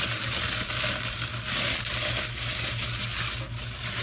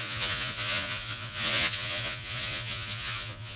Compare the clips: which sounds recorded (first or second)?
first